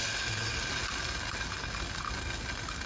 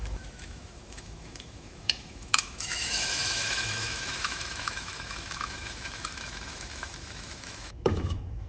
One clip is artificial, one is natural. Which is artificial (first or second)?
second